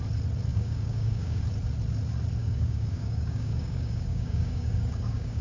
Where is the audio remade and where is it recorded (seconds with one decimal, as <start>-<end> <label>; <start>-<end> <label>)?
0.0-0.5 recorded; 0.5-1.4 remade; 1.4-2.4 recorded; 2.4-5.4 remade